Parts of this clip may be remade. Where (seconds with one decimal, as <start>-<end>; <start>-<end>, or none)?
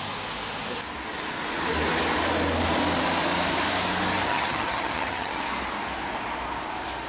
4.3-5.4